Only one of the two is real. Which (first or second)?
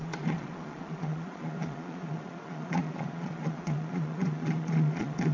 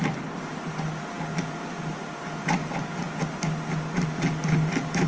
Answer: second